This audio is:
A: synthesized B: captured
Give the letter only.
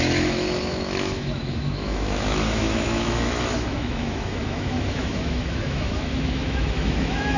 A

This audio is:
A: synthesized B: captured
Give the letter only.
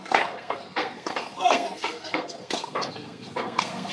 A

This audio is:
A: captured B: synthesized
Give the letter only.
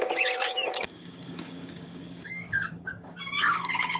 B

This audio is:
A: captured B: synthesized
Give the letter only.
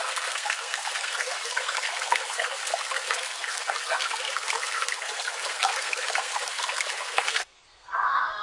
B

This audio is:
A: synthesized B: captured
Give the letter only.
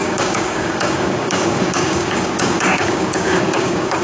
A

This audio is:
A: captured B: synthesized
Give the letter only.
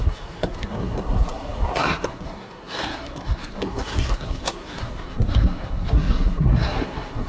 B